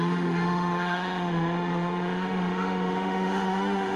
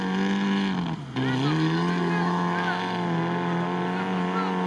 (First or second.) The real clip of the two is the second